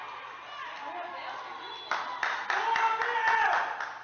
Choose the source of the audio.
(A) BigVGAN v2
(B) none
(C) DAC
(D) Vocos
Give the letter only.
B